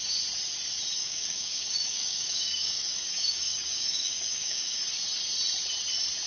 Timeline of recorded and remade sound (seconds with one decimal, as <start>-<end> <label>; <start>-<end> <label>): 0.0-1.0 recorded; 1.0-4.8 remade; 4.8-6.3 recorded